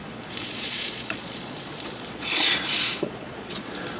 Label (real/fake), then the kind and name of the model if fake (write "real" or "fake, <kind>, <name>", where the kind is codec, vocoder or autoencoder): fake, vocoder, Vocos